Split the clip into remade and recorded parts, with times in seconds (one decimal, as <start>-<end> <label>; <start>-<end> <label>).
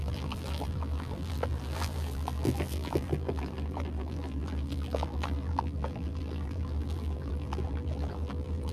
0.0-8.7 remade